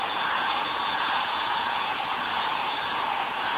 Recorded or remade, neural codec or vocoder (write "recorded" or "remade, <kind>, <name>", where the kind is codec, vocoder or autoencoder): remade, vocoder, Vocos